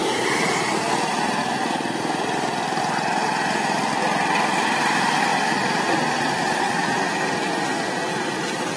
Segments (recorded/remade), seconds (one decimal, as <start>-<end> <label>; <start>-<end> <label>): 0.0-0.7 remade; 0.7-1.4 recorded; 1.4-2.8 remade; 2.8-5.3 recorded; 5.3-7.5 remade; 7.5-8.8 recorded